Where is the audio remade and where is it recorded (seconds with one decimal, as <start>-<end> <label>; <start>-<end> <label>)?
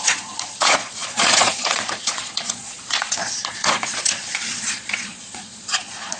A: 0.0-6.2 remade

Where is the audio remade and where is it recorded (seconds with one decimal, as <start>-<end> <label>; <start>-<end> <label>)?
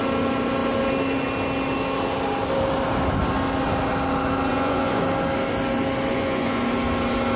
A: 0.0-4.5 recorded; 4.5-5.0 remade; 5.0-6.1 recorded; 6.1-6.6 remade; 6.6-7.4 recorded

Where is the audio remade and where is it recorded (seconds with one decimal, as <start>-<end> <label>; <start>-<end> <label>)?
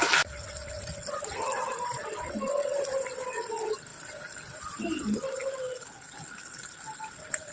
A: 0.0-7.5 recorded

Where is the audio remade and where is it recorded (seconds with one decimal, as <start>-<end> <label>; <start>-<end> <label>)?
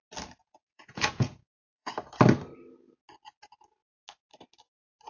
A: 0.0-0.4 recorded; 0.4-1.9 remade; 1.9-5.1 recorded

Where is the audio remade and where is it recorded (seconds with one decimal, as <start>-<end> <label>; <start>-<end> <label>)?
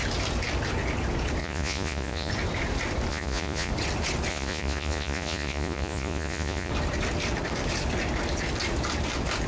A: 0.0-1.4 recorded; 1.4-2.3 remade; 2.3-3.1 recorded; 3.1-3.7 remade; 3.7-4.3 recorded; 4.3-6.7 remade; 6.7-9.5 recorded